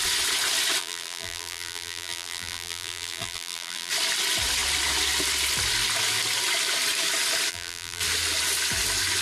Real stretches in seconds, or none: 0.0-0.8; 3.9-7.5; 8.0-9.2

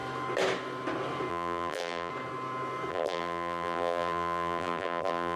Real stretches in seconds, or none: 0.0-1.3; 2.1-2.9

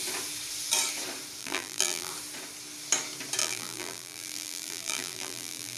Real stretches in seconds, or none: 0.0-1.4; 2.1-3.4

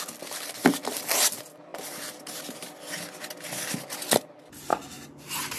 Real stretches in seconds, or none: 0.0-1.7; 2.7-4.7

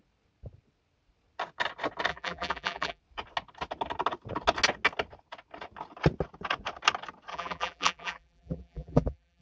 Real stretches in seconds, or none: 0.0-2.1; 3.0-7.3

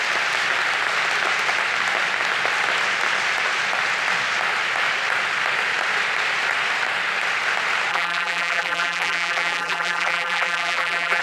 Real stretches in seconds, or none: 0.0-7.9

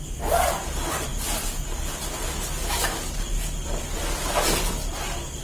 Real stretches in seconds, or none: 0.0-5.4

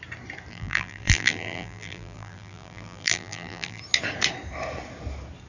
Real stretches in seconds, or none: 0.0-0.5; 3.8-5.5